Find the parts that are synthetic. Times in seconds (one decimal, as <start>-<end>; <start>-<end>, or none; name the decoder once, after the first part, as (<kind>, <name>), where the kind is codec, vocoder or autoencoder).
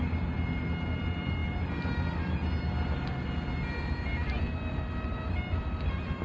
none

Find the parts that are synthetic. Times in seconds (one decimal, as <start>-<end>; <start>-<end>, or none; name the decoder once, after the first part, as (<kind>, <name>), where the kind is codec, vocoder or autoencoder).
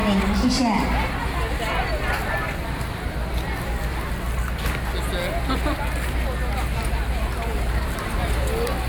0.0-1.1 (vocoder, BigVGAN v2); 7.5-8.4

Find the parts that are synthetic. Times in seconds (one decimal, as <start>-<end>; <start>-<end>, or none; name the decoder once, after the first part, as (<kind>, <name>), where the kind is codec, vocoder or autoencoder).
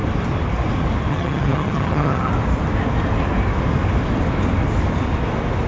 1.1-2.3 (vocoder, HiFi-GAN)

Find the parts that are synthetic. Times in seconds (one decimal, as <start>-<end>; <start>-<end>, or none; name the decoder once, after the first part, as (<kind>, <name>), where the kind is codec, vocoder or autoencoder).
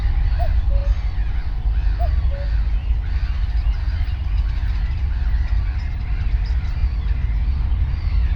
0.0-0.8 (vocoder, BigVGAN v2); 3.6-6.8; 7.8-8.4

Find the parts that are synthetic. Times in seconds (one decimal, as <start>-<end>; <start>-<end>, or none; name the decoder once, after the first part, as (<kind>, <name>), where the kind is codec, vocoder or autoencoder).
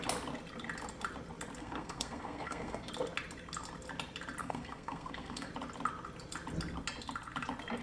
1.6-2.9 (codec, SNAC); 4.4-5.5